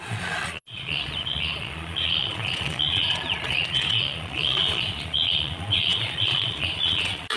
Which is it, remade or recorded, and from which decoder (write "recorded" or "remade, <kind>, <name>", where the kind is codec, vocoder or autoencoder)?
remade, vocoder, Vocos